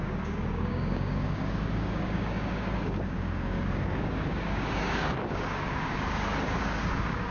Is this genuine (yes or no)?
no